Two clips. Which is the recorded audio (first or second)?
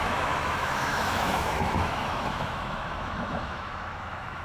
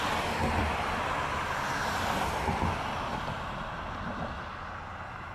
second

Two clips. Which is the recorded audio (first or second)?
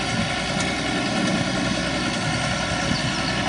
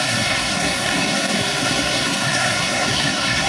first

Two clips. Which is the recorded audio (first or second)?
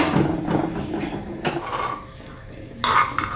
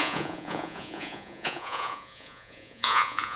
first